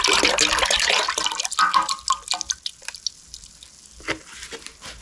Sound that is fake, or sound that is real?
real